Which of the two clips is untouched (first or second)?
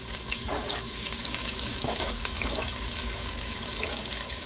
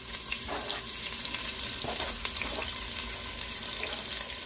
second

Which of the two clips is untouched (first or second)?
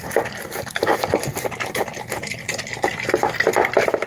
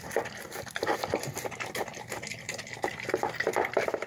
second